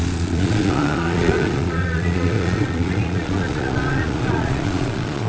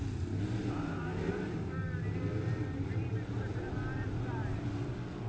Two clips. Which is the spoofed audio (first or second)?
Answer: first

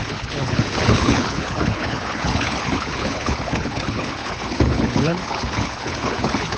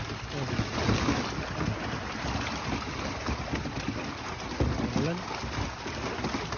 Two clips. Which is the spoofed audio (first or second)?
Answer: first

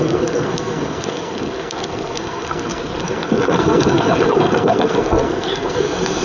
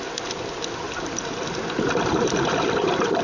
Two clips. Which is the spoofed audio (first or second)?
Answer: first